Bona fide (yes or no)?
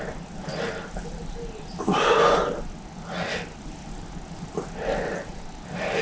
yes